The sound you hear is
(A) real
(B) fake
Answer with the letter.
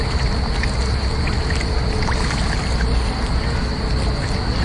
A